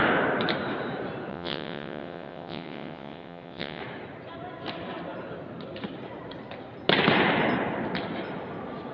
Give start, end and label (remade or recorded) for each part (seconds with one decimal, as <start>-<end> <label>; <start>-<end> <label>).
0.0-1.3 recorded; 1.3-3.8 remade; 3.8-8.9 recorded